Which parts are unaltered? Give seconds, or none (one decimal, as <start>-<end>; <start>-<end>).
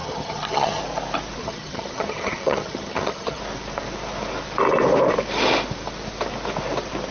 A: 0.8-1.4; 3.4-7.1